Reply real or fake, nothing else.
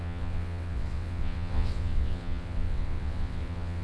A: fake